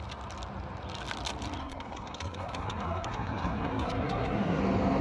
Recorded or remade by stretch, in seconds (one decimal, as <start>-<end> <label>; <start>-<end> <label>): 0.0-1.6 recorded; 1.6-4.6 remade; 4.6-5.0 recorded

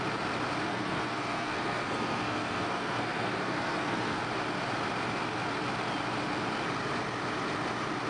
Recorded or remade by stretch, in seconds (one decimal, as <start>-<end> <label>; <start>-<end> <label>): 0.0-0.7 recorded; 0.7-4.2 remade; 4.2-8.1 recorded